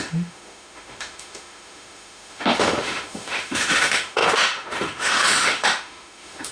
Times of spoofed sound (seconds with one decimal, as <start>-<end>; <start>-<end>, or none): 0.0-6.5

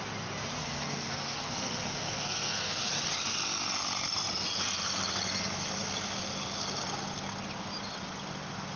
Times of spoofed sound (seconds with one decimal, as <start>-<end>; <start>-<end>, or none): 0.6-2.9

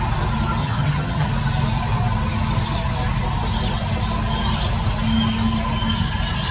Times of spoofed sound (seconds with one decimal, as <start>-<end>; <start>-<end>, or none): 0.6-1.3

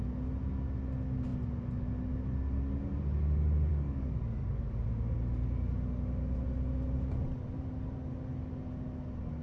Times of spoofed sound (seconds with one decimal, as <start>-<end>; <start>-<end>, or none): 3.7-4.7

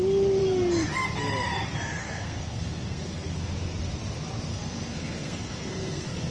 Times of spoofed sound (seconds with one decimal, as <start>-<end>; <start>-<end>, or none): 2.0-3.5; 4.5-6.3

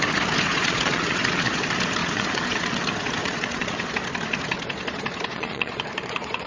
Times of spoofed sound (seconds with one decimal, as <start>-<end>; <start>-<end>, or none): 0.5-1.6; 2.0-2.8; 3.2-3.8; 5.3-6.5

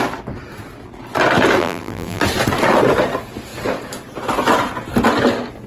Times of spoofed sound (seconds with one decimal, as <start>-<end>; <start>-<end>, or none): 1.6-2.2

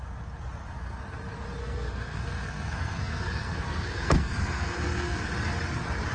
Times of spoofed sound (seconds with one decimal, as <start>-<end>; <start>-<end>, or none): 1.6-5.3